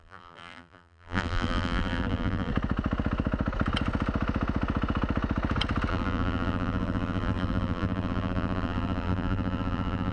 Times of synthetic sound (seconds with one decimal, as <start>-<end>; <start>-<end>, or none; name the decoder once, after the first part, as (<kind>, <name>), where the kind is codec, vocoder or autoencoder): 0.0-2.5 (vocoder, BigVGAN v2); 5.9-10.1